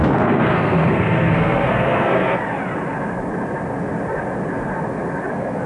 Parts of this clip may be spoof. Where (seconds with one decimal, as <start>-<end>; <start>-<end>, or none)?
0.0-2.4; 5.3-5.7